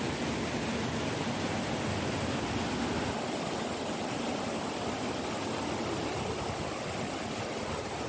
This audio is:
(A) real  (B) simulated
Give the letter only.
A